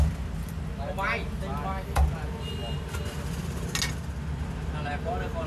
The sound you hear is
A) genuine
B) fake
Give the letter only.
A